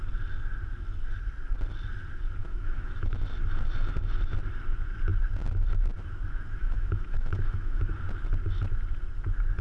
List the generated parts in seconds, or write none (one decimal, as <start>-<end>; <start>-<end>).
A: 2.4-3.2; 6.6-7.9